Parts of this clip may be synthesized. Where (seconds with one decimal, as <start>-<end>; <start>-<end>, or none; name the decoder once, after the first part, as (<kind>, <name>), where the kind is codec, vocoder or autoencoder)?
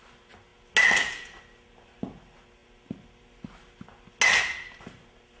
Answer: none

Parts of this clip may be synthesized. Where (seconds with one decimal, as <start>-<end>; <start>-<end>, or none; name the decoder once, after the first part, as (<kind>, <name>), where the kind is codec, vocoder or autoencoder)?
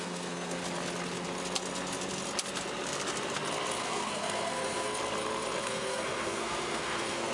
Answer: 0.0-0.6 (codec, SNAC); 3.8-4.9; 5.6-7.3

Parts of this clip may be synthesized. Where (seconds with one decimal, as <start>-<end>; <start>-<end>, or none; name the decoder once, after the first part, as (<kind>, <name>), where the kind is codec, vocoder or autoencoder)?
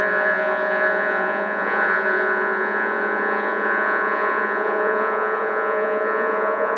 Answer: 0.0-6.8 (vocoder, Vocos)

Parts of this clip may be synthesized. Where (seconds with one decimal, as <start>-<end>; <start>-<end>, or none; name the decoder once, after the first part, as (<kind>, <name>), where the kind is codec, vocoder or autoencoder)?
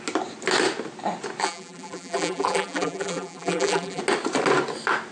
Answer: 1.4-4.0 (vocoder, BigVGAN v2)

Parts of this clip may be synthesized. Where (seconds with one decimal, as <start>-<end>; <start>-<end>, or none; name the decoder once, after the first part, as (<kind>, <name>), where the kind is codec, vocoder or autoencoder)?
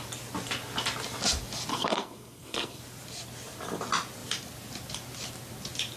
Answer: 1.7-2.8 (codec, SNAC)